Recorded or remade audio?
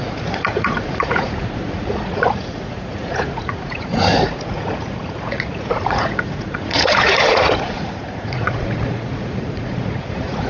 remade